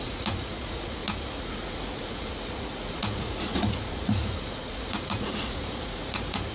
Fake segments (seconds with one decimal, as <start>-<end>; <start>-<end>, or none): 0.0-6.5